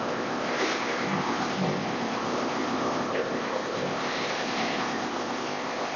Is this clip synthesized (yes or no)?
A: yes